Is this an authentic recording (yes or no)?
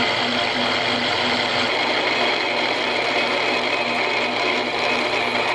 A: yes